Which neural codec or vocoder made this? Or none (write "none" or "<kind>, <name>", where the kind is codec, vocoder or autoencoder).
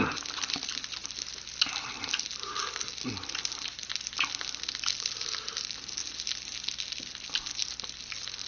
none